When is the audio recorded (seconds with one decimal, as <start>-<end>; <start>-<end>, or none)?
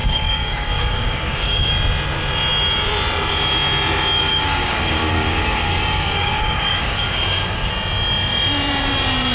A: 1.7-4.3; 7.7-9.3